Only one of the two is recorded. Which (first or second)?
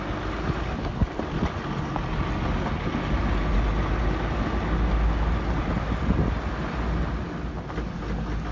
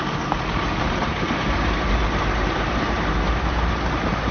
first